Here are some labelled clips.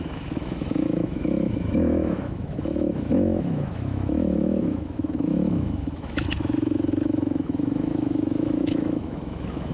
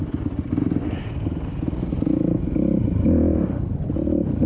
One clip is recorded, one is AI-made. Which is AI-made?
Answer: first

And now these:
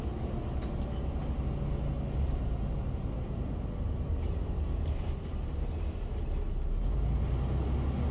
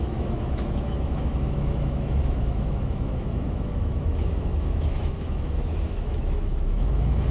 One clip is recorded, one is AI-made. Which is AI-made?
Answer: second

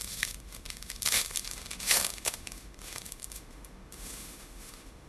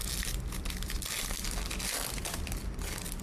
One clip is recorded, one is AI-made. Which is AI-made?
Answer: first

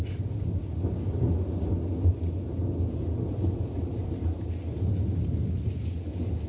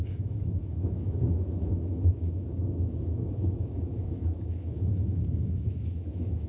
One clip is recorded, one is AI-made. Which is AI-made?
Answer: second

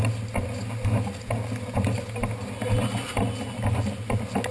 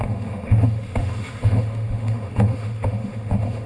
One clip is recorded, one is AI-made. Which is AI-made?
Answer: second